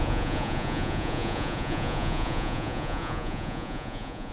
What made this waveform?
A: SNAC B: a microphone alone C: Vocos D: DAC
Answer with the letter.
C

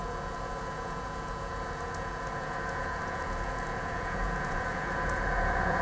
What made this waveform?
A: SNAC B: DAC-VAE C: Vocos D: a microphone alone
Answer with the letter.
C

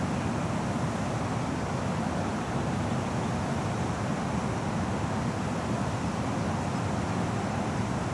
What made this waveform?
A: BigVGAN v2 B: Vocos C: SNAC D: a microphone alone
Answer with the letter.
D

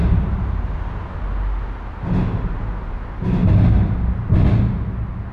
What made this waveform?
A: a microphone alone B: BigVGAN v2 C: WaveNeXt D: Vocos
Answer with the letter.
A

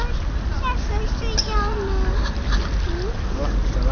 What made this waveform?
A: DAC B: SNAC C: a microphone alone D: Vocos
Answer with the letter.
C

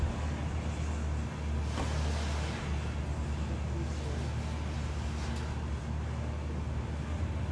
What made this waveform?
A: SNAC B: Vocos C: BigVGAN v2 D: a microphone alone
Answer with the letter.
D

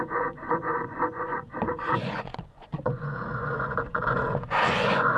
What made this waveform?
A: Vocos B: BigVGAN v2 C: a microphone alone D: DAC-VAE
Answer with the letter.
A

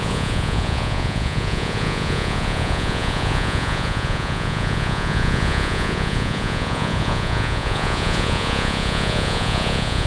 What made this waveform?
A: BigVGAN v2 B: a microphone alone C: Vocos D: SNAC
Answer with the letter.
C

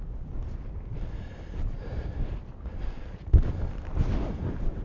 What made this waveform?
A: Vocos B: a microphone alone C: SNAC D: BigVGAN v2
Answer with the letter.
B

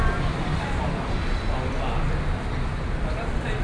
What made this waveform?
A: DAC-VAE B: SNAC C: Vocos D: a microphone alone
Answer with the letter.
D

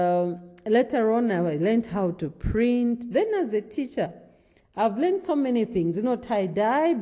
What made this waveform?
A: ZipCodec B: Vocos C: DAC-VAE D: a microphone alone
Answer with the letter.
D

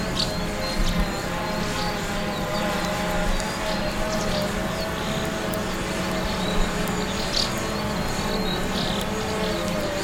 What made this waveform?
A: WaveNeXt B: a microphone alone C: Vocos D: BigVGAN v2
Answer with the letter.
B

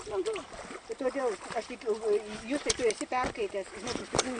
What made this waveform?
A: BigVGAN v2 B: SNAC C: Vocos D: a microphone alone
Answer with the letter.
D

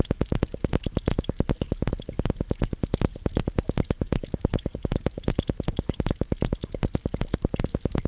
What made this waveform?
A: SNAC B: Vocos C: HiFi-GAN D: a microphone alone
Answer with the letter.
D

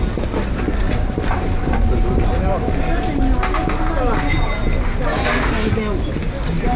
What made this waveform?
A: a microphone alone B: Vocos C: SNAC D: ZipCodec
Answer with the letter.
A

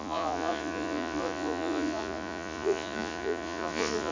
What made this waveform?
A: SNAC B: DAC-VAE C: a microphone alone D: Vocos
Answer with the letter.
D